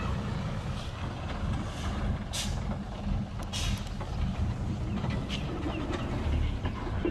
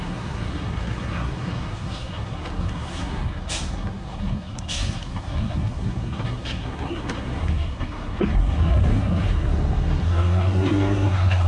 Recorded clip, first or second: first